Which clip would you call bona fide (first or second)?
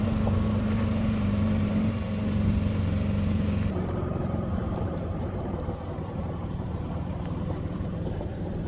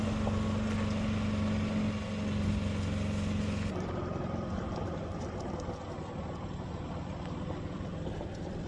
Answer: second